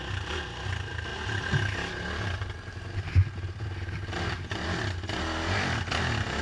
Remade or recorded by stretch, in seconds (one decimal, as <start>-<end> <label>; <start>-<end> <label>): 0.0-1.1 recorded; 1.1-1.7 remade; 1.7-6.4 recorded